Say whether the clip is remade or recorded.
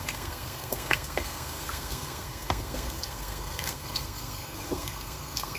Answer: remade